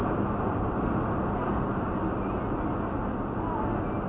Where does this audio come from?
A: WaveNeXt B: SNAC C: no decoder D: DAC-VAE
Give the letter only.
C